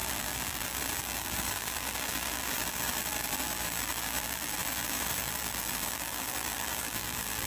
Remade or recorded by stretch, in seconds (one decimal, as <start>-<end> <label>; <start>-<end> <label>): 0.0-7.5 remade